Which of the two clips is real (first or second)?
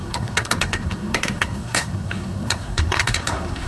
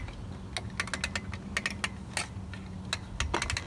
second